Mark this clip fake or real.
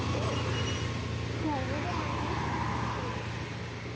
real